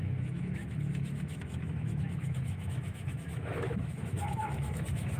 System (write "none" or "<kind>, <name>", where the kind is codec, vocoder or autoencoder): autoencoder, DAC-VAE